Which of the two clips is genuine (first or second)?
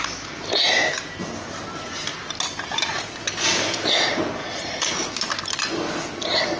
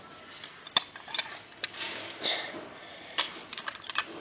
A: first